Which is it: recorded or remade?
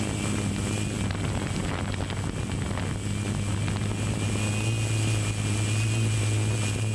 recorded